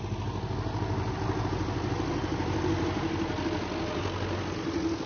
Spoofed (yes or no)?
no